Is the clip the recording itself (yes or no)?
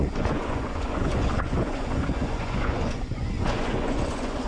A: no